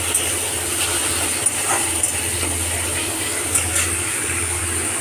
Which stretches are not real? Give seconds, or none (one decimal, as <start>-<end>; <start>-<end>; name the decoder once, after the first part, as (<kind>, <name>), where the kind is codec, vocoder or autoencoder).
3.0-4.6 (codec, DAC)